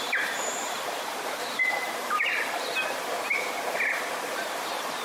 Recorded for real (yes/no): no